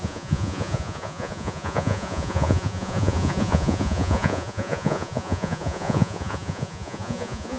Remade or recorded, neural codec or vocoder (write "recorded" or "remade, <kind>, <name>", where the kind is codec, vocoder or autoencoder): remade, vocoder, Vocos